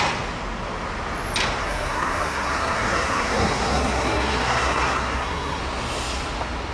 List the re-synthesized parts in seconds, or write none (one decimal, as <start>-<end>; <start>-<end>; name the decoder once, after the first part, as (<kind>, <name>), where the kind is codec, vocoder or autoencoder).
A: 1.6-5.6 (codec, SNAC)